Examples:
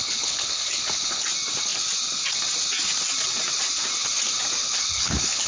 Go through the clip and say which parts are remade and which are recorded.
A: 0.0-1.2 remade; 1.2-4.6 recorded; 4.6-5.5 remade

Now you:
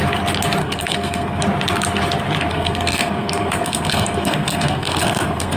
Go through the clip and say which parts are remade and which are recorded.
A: 0.0-0.6 recorded; 0.6-1.4 remade; 1.4-2.5 recorded; 2.5-5.6 remade

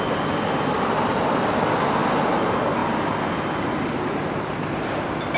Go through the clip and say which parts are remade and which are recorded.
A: 0.0-5.4 recorded

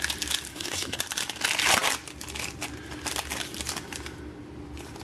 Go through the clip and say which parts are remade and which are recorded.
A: 0.0-0.5 recorded; 0.5-1.0 remade; 1.0-5.0 recorded

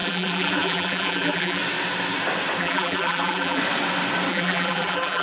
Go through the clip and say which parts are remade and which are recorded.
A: 0.0-1.6 remade; 1.6-2.6 recorded; 2.6-3.6 remade; 3.6-4.3 recorded; 4.3-5.2 remade

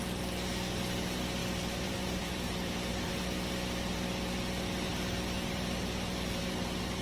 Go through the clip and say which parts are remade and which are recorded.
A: 0.0-1.4 recorded; 1.4-3.1 remade; 3.1-4.9 recorded; 4.9-7.0 remade

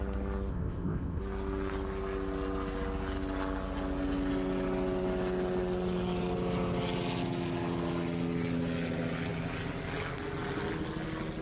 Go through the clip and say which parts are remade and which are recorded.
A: 0.0-0.5 recorded; 0.5-1.2 remade; 1.2-11.4 recorded

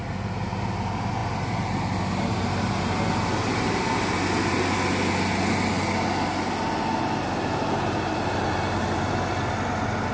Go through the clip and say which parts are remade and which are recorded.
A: 0.0-10.1 recorded